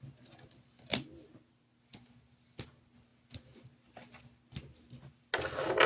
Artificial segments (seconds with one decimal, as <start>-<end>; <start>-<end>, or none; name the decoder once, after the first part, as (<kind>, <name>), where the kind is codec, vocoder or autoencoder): none